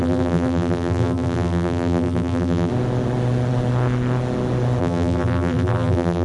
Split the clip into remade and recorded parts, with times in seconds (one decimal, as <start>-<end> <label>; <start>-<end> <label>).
0.0-2.7 remade; 2.7-4.8 recorded; 4.8-6.2 remade